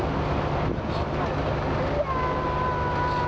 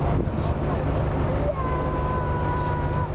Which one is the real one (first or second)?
first